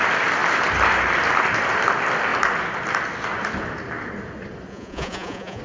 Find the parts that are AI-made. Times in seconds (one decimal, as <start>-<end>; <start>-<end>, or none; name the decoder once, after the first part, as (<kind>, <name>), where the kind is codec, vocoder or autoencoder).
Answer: 4.7-5.6 (vocoder, Vocos)